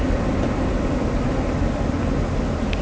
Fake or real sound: real